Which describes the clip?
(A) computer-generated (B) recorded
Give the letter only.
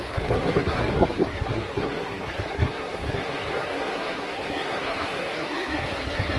A